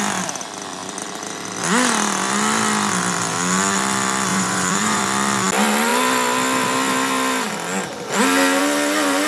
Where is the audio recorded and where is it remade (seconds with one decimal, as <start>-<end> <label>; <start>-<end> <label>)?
0.0-4.3 recorded; 4.3-5.0 remade; 5.0-9.3 recorded